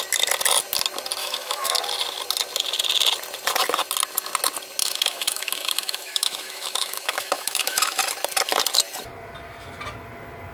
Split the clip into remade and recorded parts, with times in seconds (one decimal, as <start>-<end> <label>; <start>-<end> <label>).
0.0-1.2 recorded; 1.2-1.8 remade; 1.8-4.8 recorded; 4.8-8.0 remade; 8.0-10.5 recorded